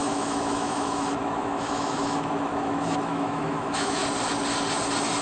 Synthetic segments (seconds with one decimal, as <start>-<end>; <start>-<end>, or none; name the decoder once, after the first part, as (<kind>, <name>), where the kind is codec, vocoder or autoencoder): 0.0-4.0 (autoencoder, DAC-VAE)